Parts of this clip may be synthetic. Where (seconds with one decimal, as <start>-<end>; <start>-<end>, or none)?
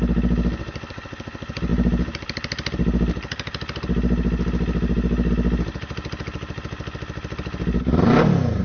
none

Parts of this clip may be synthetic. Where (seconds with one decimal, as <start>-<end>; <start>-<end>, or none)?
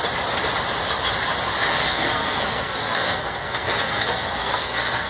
1.7-5.1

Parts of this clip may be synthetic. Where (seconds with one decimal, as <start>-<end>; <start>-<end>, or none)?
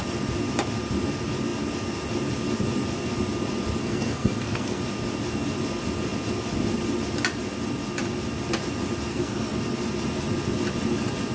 3.8-4.8; 9.1-9.6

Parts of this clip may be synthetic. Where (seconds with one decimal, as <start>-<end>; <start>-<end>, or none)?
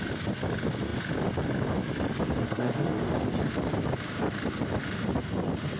2.4-3.0